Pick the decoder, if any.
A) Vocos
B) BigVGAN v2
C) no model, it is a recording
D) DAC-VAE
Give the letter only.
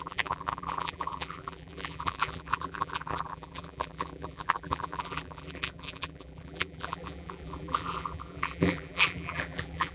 B